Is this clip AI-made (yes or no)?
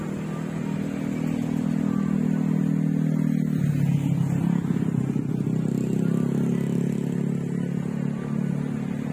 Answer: no